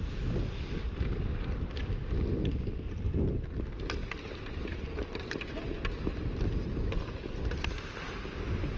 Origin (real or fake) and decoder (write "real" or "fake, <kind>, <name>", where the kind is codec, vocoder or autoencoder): real